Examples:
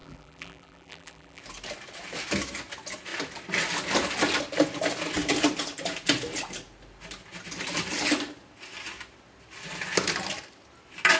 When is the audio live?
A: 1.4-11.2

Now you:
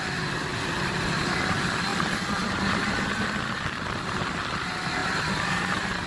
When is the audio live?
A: 0.0-0.5; 1.4-1.9; 3.0-5.0

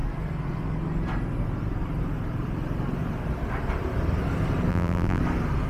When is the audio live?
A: 0.0-4.7; 5.2-5.7

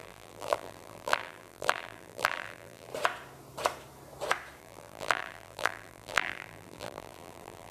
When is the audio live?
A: 2.9-4.6